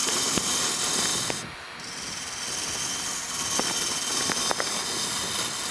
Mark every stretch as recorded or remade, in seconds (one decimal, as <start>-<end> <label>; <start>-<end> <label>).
0.0-0.5 remade; 0.5-5.7 recorded